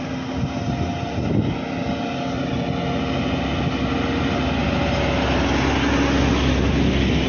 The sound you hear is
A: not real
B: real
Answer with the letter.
B